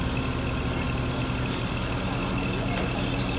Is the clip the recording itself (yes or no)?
yes